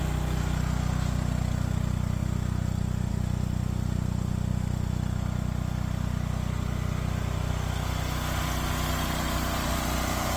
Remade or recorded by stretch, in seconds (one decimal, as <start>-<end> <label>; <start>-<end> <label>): 0.0-2.2 recorded; 2.2-3.1 remade; 3.1-4.5 recorded; 4.5-7.5 remade; 7.5-10.4 recorded